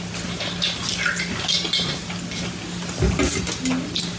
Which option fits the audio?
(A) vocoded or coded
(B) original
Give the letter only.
B